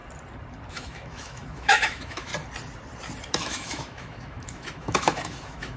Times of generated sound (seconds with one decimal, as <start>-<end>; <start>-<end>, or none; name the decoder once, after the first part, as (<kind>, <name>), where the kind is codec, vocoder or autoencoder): 0.7-2.3 (autoencoder, DAC-VAE); 3.3-5.8